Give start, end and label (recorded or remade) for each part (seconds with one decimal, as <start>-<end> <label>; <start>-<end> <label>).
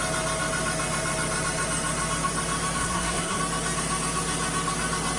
0.0-2.8 recorded; 2.8-3.4 remade; 3.4-5.2 recorded